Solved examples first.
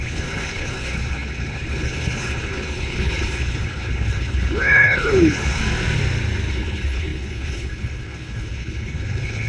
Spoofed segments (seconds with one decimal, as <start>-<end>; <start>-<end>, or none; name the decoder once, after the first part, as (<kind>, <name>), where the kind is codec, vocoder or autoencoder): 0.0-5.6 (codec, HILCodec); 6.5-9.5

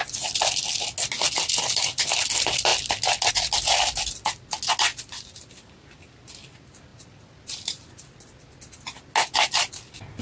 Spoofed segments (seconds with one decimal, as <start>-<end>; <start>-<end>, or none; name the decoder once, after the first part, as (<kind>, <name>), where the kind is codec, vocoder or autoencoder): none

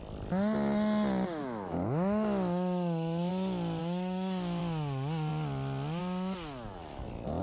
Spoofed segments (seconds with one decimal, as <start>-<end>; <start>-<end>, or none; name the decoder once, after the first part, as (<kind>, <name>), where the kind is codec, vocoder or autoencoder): 1.4-3.3 (autoencoder, DAC-VAE); 3.8-4.6

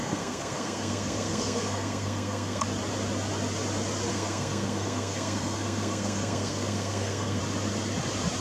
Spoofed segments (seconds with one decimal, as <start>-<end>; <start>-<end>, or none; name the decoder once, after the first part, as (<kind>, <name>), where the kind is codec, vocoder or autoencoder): 0.0-2.6 (codec, SNAC); 4.1-7.4

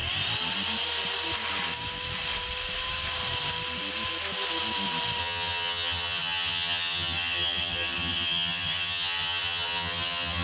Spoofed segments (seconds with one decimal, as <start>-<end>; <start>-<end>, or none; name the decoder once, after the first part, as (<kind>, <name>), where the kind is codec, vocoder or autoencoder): 5.2-10.4 (vocoder, HiFi-GAN)

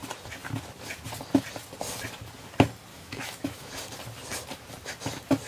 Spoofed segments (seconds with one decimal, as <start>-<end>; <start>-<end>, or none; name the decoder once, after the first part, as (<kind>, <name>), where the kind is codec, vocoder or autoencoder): 2.9-3.7 (autoencoder, DAC-VAE)